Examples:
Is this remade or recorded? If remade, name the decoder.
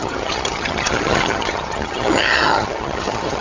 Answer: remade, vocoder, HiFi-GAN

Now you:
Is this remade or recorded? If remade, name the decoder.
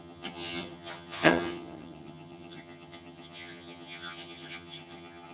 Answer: remade, vocoder, HiFi-GAN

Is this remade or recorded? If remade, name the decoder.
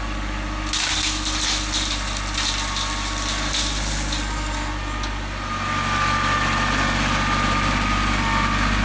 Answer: recorded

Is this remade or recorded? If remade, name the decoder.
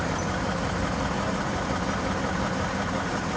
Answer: recorded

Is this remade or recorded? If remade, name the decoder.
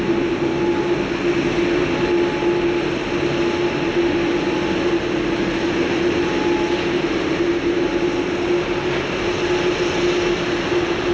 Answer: recorded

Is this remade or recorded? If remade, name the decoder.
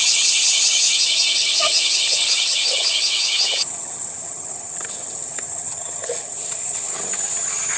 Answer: remade, vocoder, HiFi-GAN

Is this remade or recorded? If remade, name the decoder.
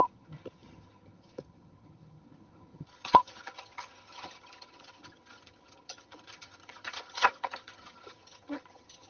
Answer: remade, vocoder, HiFi-GAN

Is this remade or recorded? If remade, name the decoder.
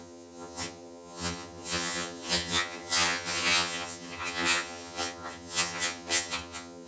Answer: remade, vocoder, HiFi-GAN